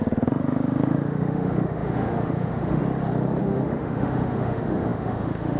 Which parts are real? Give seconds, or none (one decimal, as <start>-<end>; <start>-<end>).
2.8-3.4